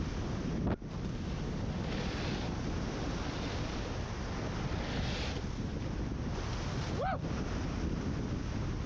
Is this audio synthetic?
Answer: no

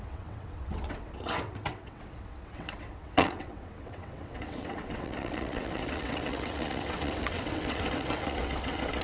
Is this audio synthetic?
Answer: yes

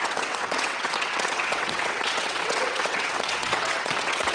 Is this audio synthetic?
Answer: yes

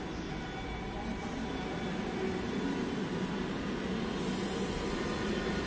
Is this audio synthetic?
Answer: no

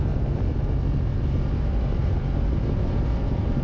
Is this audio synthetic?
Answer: no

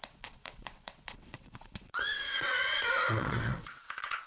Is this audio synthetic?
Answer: yes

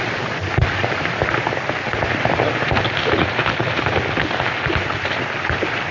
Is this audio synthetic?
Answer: no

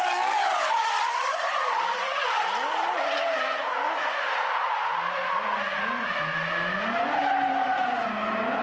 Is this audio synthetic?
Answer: no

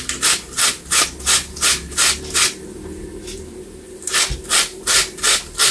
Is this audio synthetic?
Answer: no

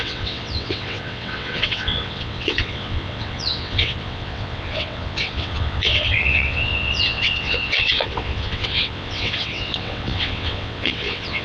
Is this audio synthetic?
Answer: yes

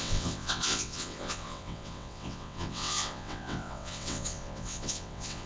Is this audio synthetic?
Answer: yes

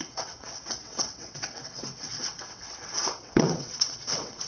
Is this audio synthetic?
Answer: yes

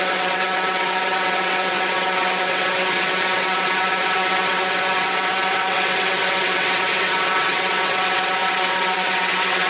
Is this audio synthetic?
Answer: yes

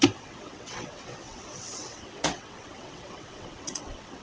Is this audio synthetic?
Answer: yes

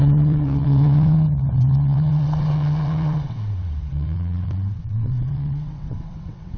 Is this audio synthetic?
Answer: yes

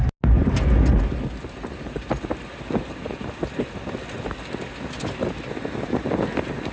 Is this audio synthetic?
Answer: no